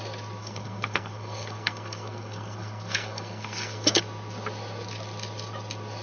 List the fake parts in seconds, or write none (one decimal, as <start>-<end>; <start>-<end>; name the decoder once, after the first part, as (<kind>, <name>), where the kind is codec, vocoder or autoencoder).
0.4-4.0 (codec, SNAC)